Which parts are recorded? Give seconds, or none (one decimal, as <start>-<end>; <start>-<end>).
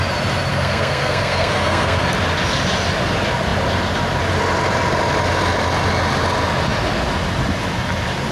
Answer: 0.0-0.5; 2.0-8.3